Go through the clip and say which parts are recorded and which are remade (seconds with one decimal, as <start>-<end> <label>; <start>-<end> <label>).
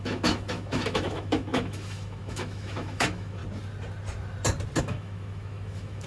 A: 0.0-3.4 remade; 3.4-4.8 recorded; 4.8-6.1 remade